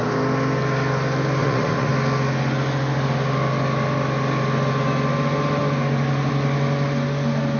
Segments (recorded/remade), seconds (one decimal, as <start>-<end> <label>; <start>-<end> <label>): 0.0-1.4 recorded; 1.4-1.9 remade; 1.9-7.6 recorded